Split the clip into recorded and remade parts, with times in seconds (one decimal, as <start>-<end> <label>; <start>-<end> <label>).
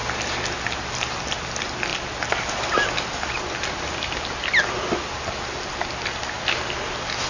0.0-7.3 recorded